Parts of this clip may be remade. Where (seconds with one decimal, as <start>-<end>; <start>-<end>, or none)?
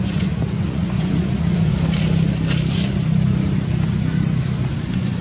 0.0-1.7; 4.8-5.2